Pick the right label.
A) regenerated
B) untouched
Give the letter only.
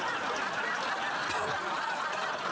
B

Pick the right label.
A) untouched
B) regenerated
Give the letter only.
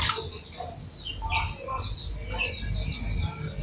A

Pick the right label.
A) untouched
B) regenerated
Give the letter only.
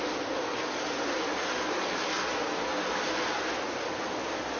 A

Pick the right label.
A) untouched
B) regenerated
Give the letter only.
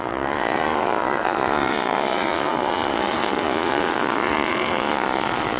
B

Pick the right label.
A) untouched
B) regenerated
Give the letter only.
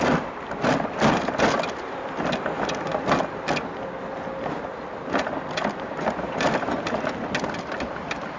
A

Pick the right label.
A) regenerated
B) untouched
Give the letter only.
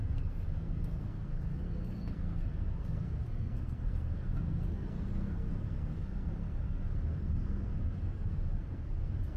A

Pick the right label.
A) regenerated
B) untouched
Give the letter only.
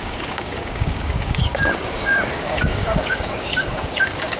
A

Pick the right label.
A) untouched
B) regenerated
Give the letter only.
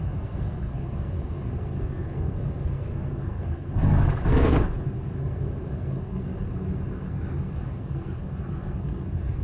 B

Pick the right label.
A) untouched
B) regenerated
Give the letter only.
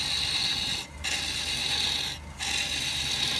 A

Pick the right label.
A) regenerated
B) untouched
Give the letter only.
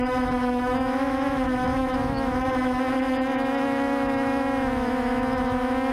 A